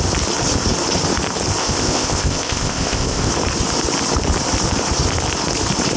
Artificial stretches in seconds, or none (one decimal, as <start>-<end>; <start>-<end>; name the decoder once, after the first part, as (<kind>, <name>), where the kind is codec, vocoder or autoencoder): 1.6-3.3 (codec, ZipCodec)